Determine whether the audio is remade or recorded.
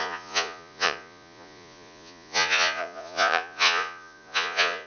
remade